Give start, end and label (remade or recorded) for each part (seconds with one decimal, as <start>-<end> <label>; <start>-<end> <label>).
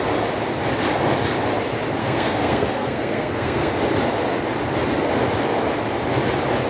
0.0-2.0 recorded; 2.0-3.7 remade; 3.7-6.7 recorded